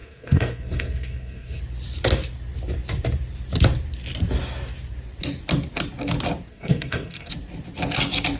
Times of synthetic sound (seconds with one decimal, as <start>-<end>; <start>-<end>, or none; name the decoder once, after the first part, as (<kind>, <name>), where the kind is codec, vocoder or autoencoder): 0.0-1.6 (codec, SNAC); 6.5-7.3